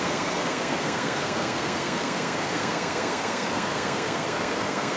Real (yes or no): no